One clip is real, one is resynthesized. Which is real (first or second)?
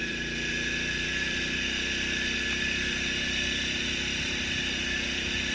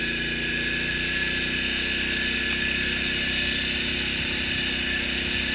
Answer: second